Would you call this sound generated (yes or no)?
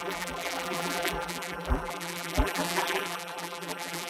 yes